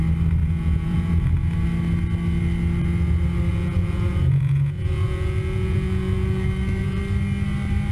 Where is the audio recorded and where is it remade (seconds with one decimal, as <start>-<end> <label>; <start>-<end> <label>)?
0.0-0.4 recorded; 0.4-1.2 remade; 1.2-3.5 recorded; 3.5-7.0 remade; 7.0-7.9 recorded